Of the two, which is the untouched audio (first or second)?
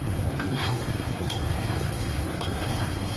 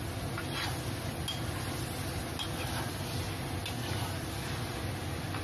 second